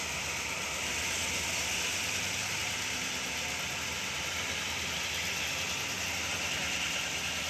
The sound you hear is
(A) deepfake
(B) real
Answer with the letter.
B